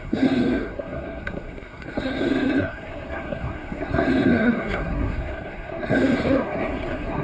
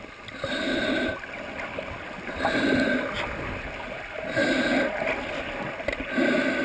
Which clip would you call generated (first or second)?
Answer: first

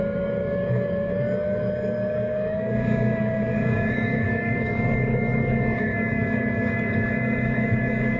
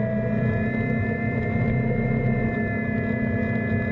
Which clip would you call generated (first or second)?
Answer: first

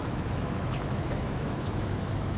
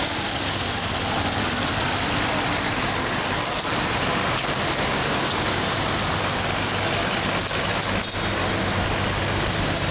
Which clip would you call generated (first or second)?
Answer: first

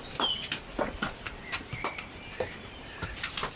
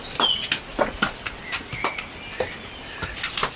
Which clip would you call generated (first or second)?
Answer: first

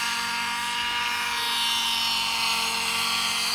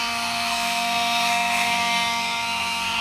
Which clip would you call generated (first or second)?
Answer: second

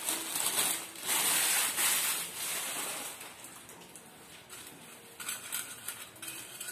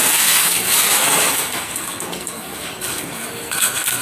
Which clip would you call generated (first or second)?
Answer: second